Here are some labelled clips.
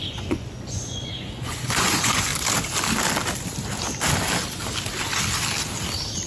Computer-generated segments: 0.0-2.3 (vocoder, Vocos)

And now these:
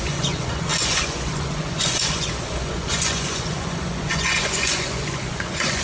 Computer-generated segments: 0.0-5.8 (vocoder, Vocos)

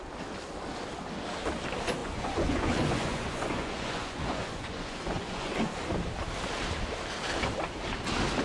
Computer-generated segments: 2.0-5.7 (vocoder, Vocos)

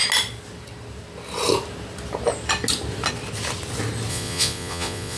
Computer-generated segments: 4.1-5.2 (vocoder, Vocos)

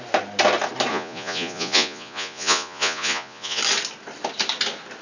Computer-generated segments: 0.9-3.6 (vocoder, Vocos)

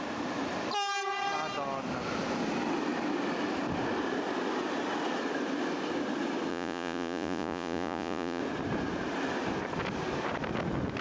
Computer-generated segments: 6.5-8.4 (vocoder, Vocos)